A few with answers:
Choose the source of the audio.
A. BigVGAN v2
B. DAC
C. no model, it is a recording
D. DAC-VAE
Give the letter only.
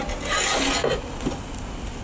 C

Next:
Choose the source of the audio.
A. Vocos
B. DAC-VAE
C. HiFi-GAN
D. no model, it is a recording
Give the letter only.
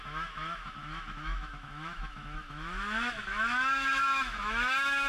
B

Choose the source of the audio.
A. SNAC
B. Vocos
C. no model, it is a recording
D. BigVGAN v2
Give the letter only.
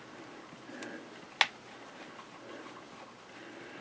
C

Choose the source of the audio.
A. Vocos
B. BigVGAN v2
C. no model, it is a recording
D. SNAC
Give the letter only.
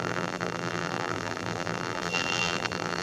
B